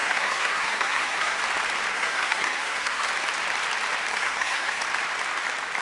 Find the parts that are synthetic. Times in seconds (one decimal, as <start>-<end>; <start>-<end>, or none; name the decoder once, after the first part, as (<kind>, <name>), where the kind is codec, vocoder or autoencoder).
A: 0.0-1.4 (codec, SNAC); 1.9-3.1; 4.1-4.8